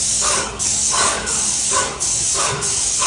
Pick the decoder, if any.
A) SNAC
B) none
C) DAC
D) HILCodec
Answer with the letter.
C